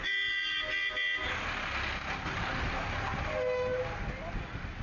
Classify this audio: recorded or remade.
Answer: recorded